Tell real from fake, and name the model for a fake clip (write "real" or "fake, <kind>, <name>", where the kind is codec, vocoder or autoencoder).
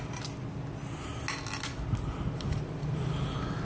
real